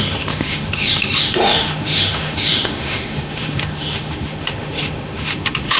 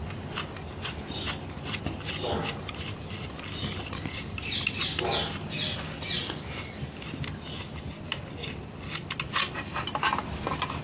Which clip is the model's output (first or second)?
first